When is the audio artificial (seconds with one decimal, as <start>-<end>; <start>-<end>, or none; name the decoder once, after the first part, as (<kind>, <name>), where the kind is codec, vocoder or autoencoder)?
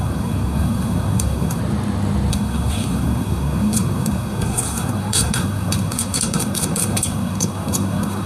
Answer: 0.0-1.6 (codec, SNAC); 2.3-8.3